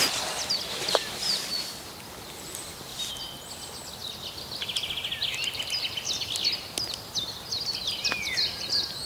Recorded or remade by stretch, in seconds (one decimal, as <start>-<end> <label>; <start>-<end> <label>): 0.0-9.1 recorded